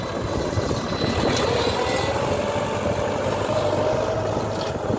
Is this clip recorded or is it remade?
recorded